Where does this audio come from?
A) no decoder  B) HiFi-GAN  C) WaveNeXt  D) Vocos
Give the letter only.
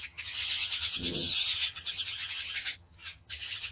B